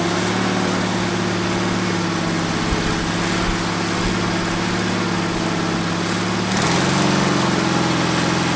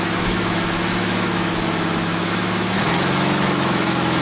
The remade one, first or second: second